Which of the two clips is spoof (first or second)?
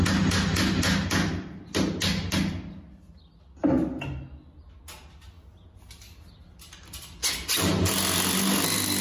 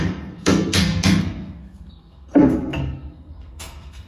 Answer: second